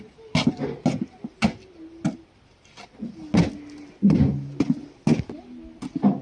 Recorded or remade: recorded